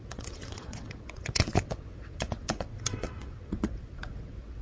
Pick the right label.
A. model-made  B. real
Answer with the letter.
A